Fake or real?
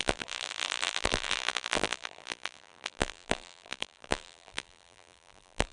fake